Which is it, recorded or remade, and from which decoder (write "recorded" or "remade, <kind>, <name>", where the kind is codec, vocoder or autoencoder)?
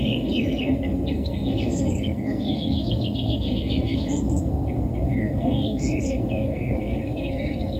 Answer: remade, codec, SNAC